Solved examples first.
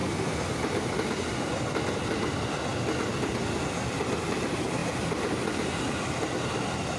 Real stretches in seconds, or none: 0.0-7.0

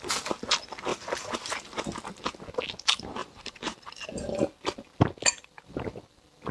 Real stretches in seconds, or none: 0.0-0.9; 1.7-3.2; 3.9-6.5

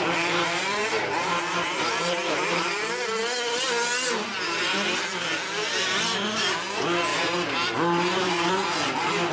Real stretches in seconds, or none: 0.0-0.8; 3.2-7.1; 8.5-9.3

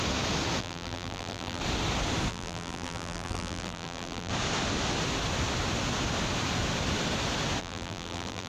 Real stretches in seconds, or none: 0.0-0.6; 1.6-2.3; 4.3-7.6

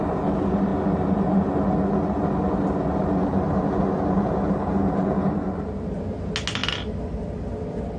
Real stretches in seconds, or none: 0.0-8.0